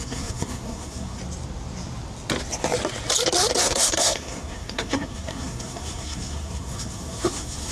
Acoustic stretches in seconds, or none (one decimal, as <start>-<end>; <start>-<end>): 1.2-3.6